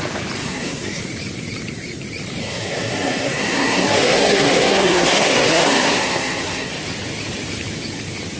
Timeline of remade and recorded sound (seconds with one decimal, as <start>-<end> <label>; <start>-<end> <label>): 0.0-0.4 recorded; 0.4-1.0 remade; 1.0-2.4 recorded; 2.4-6.7 remade; 6.7-8.4 recorded